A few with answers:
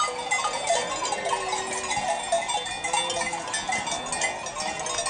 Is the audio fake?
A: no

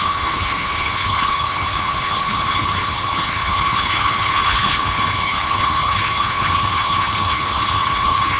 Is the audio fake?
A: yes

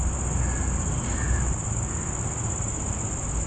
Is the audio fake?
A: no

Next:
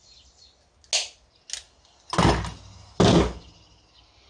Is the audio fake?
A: no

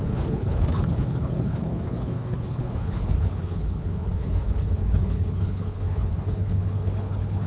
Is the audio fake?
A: yes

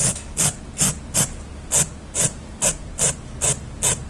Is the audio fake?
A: no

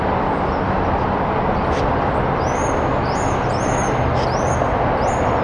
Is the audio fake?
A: no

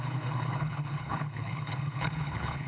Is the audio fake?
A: yes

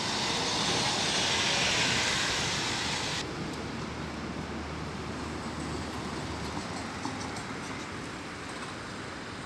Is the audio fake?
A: no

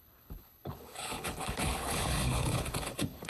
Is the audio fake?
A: yes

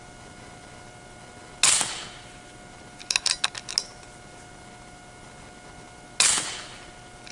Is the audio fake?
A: no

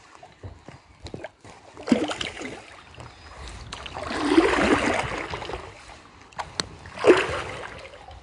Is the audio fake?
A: no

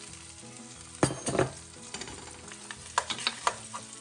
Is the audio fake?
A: no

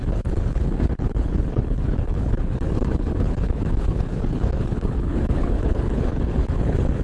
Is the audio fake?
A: yes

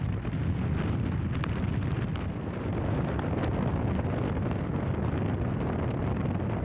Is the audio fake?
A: no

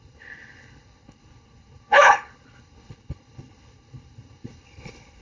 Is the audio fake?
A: yes